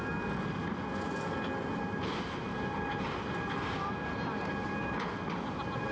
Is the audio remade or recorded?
recorded